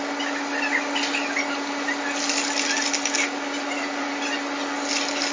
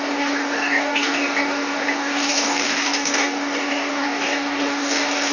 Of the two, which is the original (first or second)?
first